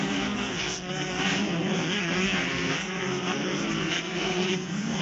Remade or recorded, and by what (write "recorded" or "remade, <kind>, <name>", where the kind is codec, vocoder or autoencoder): remade, codec, SNAC